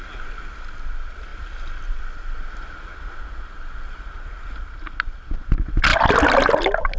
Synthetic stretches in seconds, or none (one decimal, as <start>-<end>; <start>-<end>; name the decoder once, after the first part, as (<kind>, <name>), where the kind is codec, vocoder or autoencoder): none